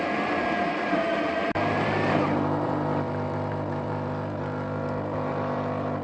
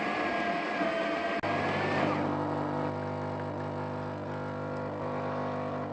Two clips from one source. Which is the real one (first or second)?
second